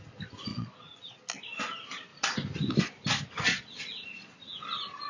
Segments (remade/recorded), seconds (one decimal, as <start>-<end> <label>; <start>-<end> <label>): 0.0-0.5 recorded; 0.5-1.2 remade; 1.2-3.5 recorded; 3.5-4.6 remade; 4.6-5.1 recorded